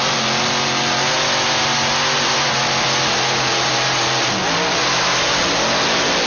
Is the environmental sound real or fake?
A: real